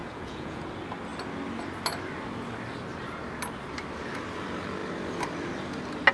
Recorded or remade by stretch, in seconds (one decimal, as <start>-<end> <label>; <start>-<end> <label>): 0.0-0.6 remade; 0.6-6.1 recorded